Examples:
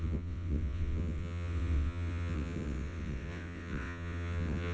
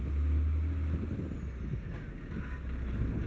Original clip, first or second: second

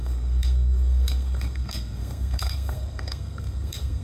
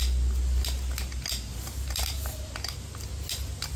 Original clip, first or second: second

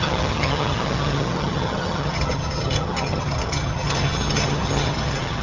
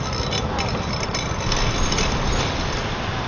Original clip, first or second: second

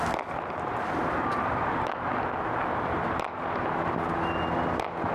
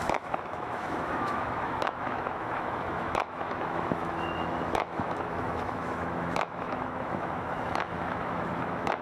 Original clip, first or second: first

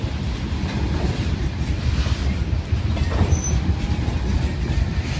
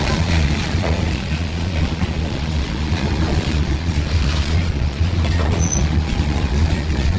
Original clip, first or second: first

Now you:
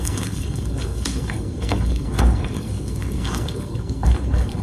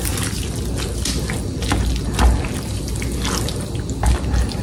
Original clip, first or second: second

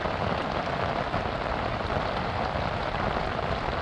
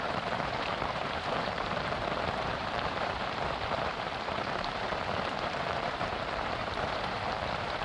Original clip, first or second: first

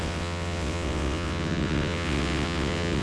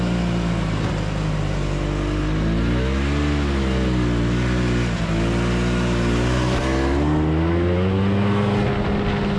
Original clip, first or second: second